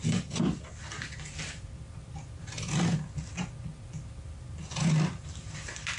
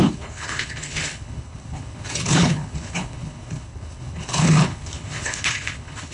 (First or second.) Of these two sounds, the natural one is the first